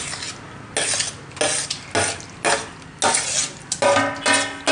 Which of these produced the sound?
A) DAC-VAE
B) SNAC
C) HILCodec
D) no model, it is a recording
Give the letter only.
D